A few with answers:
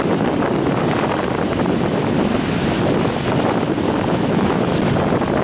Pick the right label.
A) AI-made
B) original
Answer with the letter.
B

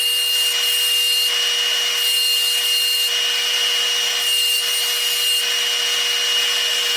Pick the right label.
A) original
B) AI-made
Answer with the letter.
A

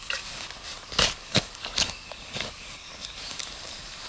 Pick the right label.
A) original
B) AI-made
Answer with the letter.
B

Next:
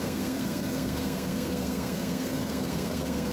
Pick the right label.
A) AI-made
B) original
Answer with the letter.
A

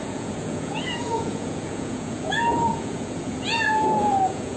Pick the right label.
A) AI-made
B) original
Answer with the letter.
A